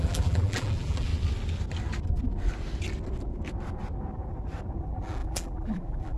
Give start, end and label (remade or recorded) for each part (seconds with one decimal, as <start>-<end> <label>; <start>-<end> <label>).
0.0-1.1 remade; 1.1-4.8 recorded; 4.8-6.2 remade